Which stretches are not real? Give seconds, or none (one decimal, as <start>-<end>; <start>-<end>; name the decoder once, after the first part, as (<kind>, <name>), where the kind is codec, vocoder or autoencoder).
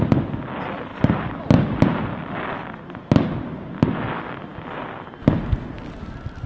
0.9-1.4 (vocoder, BigVGAN v2)